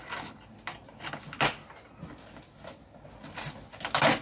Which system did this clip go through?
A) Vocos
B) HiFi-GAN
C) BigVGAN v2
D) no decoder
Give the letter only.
D